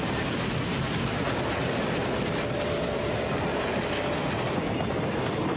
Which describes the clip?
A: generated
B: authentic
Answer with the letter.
B